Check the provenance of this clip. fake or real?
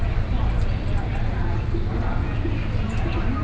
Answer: real